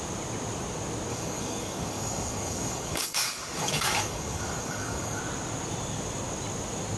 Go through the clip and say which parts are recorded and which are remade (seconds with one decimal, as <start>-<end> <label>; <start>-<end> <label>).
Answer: 0.0-1.1 recorded; 1.1-5.2 remade; 5.2-7.0 recorded